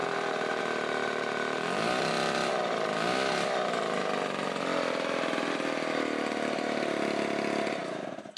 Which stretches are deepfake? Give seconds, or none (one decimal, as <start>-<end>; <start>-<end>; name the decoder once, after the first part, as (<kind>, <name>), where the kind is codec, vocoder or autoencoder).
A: 0.0-0.6 (vocoder, BigVGAN v2); 7.8-8.4